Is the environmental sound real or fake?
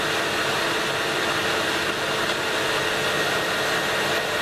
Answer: real